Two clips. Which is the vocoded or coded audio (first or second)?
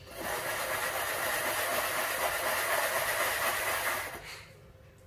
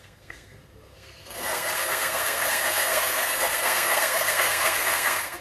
second